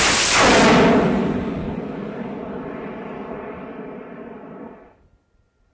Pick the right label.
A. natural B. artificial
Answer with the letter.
A